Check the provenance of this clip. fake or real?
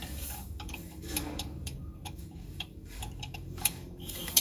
fake